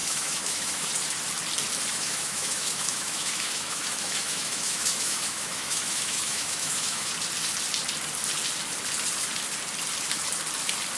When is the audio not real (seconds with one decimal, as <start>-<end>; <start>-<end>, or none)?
0.0-0.9; 1.9-7.1